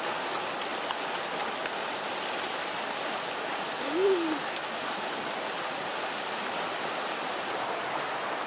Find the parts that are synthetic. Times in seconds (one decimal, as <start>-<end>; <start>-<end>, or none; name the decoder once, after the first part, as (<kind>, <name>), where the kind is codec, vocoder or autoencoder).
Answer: none